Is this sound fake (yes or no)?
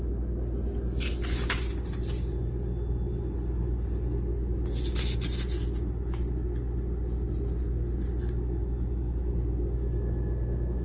no